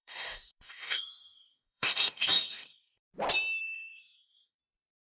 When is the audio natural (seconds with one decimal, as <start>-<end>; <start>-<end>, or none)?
3.0-3.6; 4.6-5.1